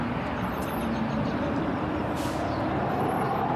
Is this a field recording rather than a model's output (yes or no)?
yes